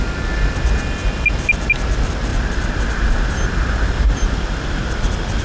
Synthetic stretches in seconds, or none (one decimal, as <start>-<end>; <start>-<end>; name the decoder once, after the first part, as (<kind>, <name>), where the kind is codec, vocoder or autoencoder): 2.3-5.0 (vocoder, BigVGAN v2)